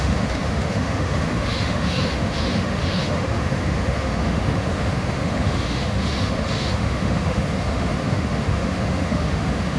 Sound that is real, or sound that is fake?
fake